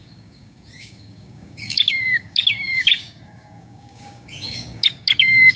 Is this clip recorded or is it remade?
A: remade